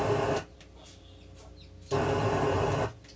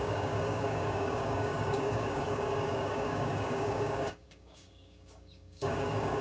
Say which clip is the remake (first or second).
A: second